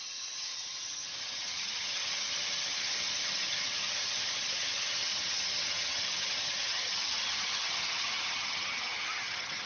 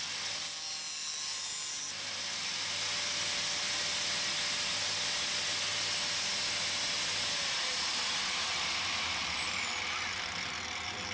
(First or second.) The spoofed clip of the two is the first